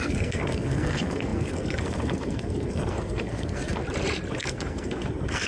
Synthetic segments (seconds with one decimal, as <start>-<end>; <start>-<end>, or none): 0.0-3.8; 4.3-5.5